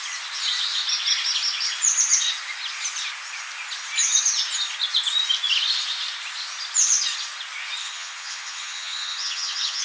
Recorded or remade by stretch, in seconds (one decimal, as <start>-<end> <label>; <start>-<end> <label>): 0.0-7.8 recorded; 7.8-9.8 remade